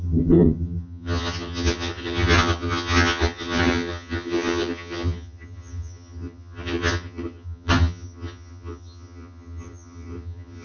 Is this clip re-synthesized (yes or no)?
yes